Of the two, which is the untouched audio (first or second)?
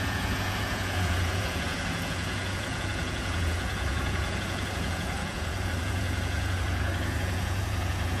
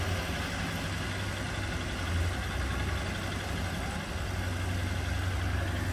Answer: second